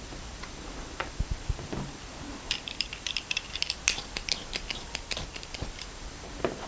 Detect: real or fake fake